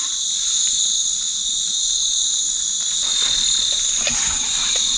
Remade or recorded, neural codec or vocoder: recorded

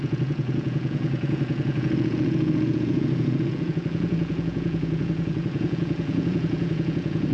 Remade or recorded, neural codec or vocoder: remade, vocoder, Vocos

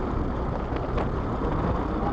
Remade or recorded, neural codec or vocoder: recorded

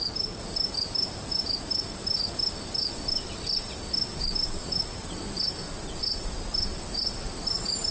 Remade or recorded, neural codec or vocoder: recorded